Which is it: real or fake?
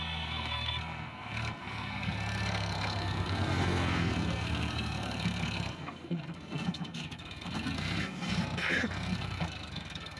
fake